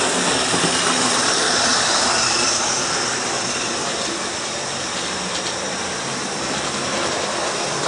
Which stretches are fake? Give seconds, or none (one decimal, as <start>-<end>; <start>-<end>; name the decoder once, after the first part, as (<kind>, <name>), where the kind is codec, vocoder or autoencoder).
1.7-6.4 (vocoder, BigVGAN v2)

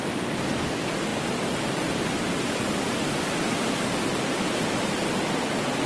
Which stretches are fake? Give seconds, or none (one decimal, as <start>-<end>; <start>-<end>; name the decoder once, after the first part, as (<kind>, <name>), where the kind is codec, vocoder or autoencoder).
none